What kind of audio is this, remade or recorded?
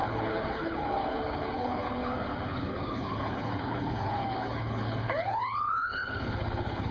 remade